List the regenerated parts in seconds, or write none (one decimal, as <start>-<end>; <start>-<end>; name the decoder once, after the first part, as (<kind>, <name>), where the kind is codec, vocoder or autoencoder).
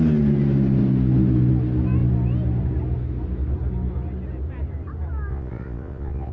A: 5.3-6.3 (vocoder, Vocos)